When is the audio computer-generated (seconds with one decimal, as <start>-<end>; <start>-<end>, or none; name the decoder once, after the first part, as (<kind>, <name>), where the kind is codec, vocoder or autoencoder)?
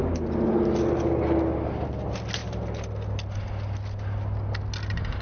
none